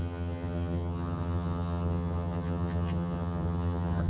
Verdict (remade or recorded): remade